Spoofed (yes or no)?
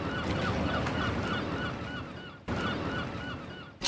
no